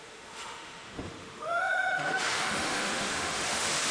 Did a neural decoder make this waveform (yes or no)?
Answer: yes